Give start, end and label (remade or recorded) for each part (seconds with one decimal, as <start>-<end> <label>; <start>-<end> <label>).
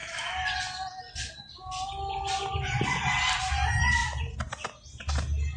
0.0-5.6 recorded